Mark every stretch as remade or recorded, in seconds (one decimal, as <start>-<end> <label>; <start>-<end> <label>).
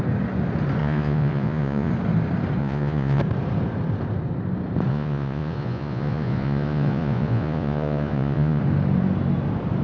0.0-0.8 recorded; 0.8-1.9 remade; 1.9-2.6 recorded; 2.6-3.2 remade; 3.2-4.9 recorded; 4.9-8.6 remade; 8.6-9.8 recorded